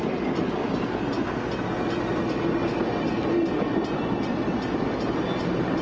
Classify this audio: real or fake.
real